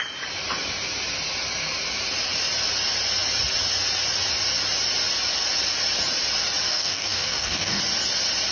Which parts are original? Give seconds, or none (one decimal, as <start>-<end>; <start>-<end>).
0.0-6.7; 7.8-8.5